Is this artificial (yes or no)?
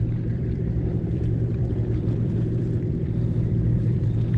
yes